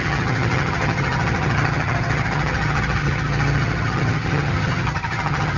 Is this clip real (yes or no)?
no